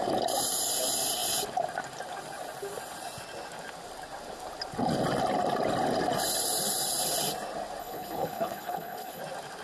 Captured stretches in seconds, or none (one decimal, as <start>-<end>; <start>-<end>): 0.0-7.8; 9.2-9.6